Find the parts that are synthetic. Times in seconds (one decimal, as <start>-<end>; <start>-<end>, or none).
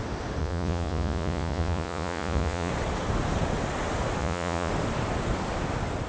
0.4-2.7; 4.2-4.7